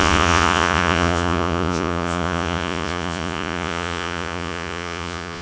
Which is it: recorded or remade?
remade